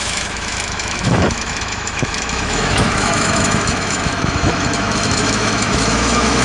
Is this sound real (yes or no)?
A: no